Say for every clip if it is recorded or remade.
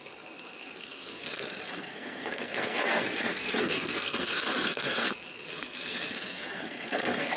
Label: remade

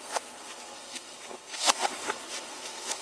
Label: remade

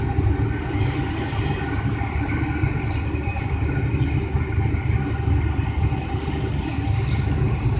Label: recorded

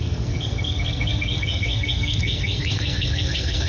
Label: remade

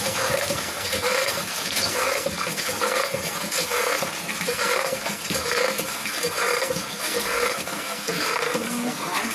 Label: remade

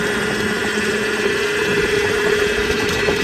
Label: recorded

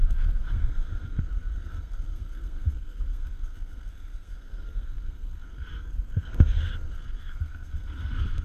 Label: remade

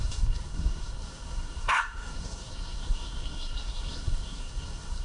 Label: remade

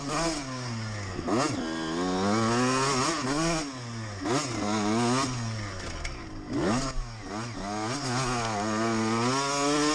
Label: recorded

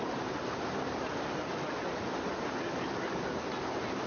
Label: recorded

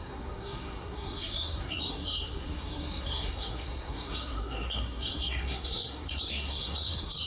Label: remade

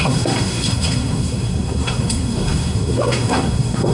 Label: remade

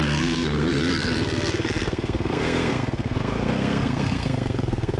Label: remade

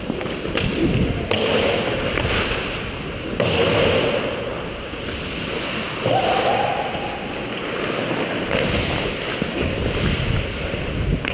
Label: recorded